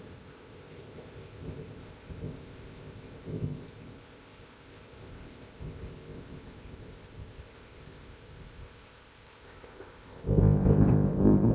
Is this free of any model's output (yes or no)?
no